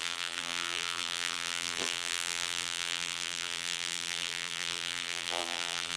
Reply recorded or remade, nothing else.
remade